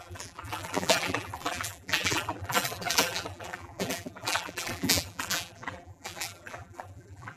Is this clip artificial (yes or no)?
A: yes